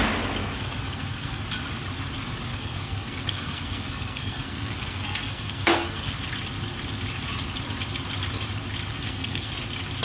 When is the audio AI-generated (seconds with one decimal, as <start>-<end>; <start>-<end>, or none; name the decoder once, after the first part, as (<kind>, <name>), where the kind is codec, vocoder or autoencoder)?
0.4-1.4 (codec, SNAC); 2.5-6.2; 8.9-9.5